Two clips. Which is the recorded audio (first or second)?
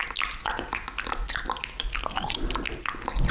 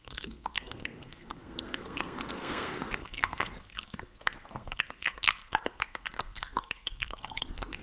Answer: first